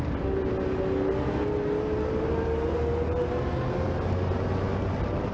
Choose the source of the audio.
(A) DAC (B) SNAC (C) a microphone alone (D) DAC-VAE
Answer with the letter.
C